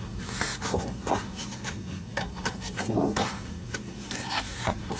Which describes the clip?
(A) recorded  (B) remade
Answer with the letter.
B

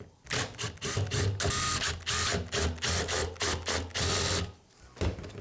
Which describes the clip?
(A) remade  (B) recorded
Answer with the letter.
B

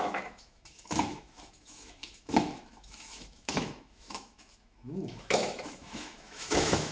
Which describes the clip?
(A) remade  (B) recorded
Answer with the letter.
A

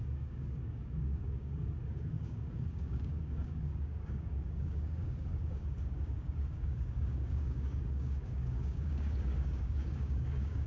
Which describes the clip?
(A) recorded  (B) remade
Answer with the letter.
B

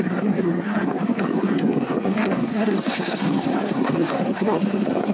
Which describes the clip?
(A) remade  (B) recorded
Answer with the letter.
A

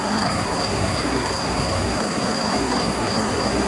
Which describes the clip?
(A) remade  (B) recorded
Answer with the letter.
A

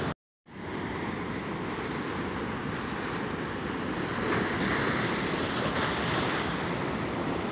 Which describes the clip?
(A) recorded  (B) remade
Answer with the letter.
A